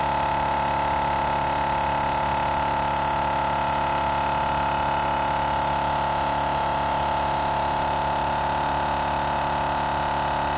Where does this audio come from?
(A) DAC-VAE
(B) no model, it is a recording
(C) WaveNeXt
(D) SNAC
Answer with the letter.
B